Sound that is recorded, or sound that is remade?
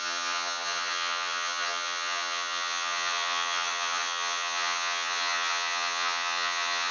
remade